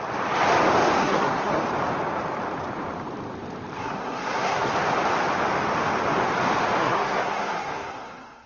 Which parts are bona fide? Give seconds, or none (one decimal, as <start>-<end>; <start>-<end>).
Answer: 0.0-1.0; 1.6-3.8; 4.7-6.8